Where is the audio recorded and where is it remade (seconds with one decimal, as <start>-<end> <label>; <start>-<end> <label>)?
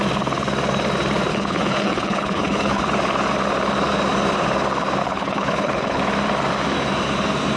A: 0.0-1.3 recorded; 1.3-2.8 remade; 2.8-5.0 recorded; 5.0-6.0 remade; 6.0-7.6 recorded